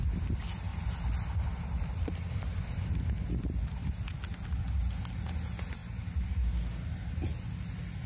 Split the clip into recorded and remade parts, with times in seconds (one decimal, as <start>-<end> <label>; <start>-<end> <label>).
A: 0.0-0.7 recorded; 0.7-4.9 remade; 4.9-8.1 recorded